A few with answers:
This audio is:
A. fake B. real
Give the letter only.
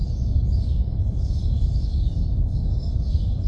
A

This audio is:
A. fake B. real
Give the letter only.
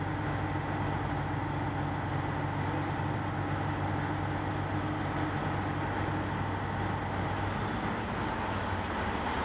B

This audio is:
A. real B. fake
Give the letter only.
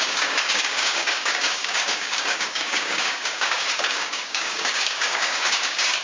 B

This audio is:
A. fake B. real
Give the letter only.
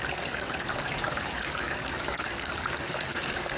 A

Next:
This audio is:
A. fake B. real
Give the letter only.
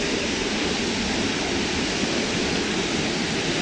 B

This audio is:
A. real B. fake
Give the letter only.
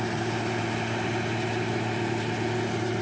A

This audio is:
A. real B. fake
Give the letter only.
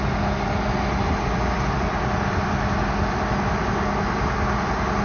A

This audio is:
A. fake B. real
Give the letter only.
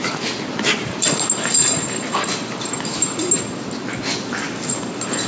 B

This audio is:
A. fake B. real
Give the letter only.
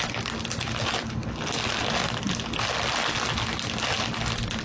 B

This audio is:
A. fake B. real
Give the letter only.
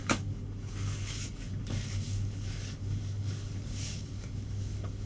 A